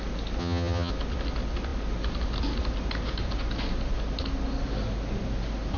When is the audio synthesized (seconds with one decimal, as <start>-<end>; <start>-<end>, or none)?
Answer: 0.4-0.9

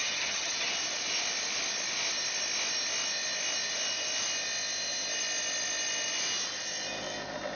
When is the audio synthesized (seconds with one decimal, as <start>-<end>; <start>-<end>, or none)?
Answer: 0.0-0.7

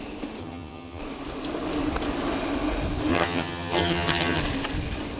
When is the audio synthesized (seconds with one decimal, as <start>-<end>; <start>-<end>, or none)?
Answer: 0.4-1.0; 3.1-4.4

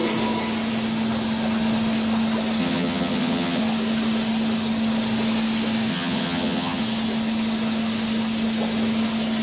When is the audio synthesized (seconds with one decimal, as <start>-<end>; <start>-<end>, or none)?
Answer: 2.6-3.6; 5.9-6.8

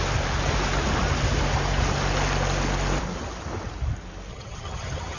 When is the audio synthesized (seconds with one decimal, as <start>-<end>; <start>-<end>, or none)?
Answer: 4.3-5.2

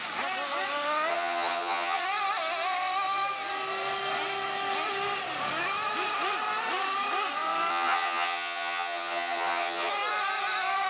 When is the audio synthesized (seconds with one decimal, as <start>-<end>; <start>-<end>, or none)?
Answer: 1.1-2.0; 7.7-9.9

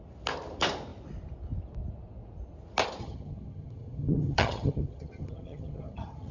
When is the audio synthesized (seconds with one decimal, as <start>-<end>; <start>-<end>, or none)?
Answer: 3.0-6.3

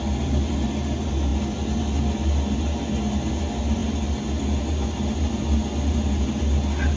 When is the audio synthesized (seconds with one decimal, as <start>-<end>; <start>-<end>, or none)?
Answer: none